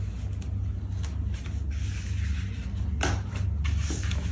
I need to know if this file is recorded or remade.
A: recorded